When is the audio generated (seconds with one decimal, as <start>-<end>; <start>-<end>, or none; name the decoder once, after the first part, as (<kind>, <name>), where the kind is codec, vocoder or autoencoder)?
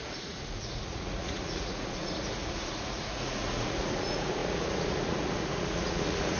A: 0.0-6.4 (vocoder, Vocos)